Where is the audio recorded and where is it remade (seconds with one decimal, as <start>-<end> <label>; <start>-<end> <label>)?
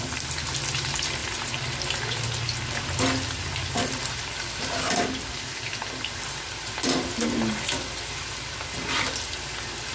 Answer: 0.0-9.9 recorded